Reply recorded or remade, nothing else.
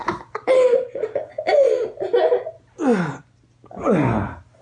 recorded